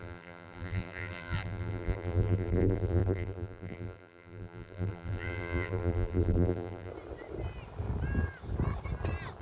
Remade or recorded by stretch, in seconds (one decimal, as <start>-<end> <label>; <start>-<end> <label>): 0.0-6.9 remade; 6.9-9.4 recorded